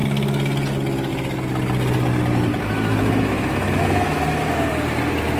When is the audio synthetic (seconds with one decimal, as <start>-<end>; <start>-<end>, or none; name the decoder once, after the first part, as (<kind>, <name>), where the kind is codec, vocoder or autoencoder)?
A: 2.5-4.7 (autoencoder, DAC-VAE)